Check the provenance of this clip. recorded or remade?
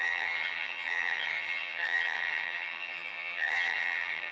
remade